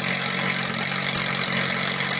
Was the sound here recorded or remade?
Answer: recorded